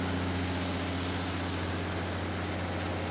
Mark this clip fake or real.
real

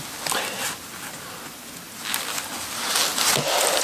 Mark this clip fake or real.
real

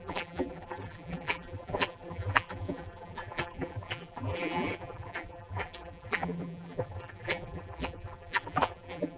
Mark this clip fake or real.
fake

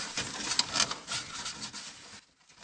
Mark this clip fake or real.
real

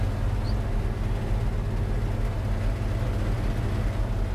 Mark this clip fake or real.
real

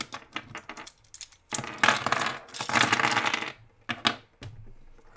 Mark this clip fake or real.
real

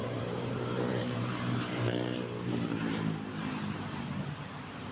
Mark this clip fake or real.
fake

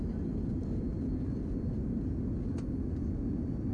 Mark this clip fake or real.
real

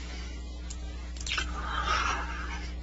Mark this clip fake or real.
real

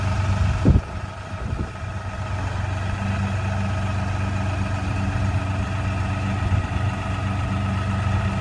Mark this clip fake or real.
real